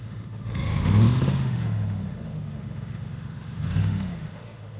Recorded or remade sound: remade